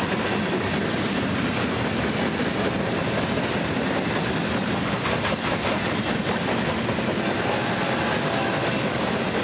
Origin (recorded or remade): recorded